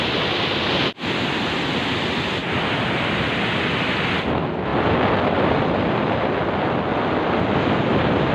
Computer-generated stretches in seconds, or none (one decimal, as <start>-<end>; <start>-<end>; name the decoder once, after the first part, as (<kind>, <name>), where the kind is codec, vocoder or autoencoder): 4.7-6.0 (vocoder, BigVGAN v2)